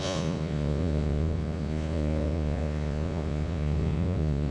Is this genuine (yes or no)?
no